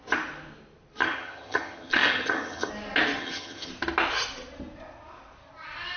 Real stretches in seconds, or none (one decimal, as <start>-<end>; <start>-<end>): 0.0-1.0; 2.7-3.2; 3.7-6.0